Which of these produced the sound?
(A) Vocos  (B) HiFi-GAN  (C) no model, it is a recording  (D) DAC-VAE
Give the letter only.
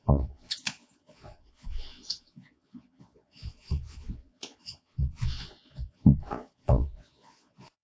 A